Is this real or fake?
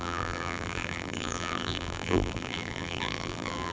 fake